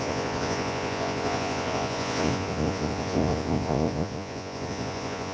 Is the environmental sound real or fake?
fake